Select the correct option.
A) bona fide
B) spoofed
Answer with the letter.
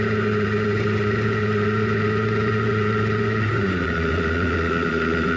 B